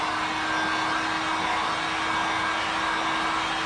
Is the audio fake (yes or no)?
no